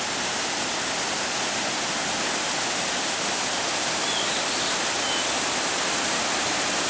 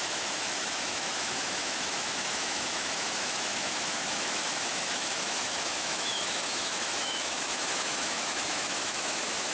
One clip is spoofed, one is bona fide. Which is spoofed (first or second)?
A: second